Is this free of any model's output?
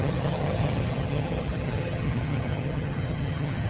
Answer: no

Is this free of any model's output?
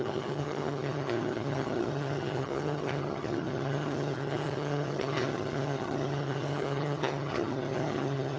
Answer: no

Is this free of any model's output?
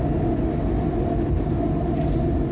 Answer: yes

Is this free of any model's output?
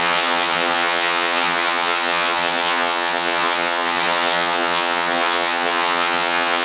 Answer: no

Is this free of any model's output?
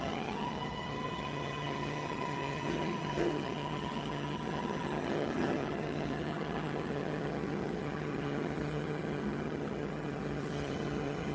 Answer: no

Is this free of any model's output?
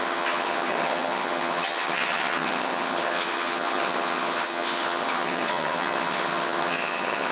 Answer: no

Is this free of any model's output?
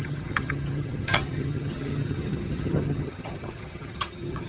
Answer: no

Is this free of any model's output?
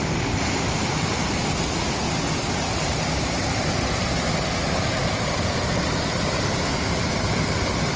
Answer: yes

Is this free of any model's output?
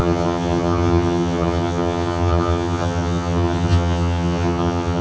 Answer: no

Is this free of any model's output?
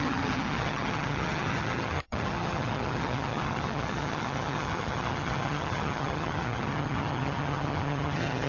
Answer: no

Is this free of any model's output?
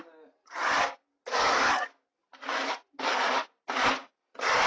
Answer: yes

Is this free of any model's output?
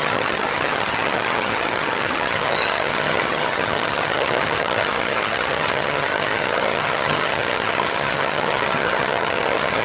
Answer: no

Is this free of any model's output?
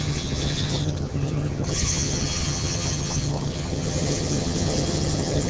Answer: no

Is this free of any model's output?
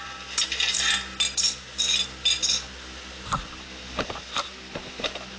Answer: yes